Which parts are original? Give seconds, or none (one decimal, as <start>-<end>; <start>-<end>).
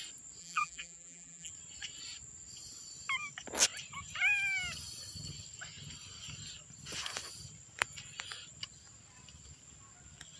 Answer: 0.0-0.4; 1.5-10.4